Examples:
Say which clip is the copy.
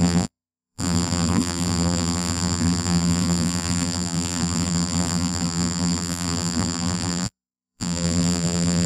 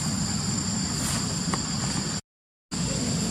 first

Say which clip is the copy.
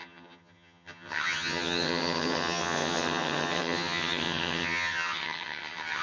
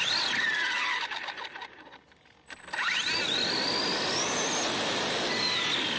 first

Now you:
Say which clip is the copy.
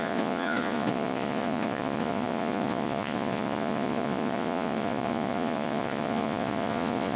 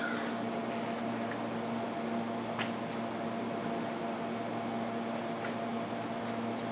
first